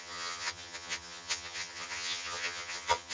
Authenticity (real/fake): fake